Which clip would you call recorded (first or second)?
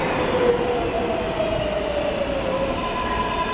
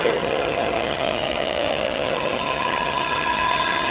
first